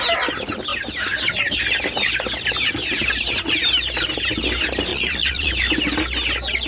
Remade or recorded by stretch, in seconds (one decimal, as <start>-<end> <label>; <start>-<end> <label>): 0.0-4.9 recorded; 4.9-5.5 remade; 5.5-6.7 recorded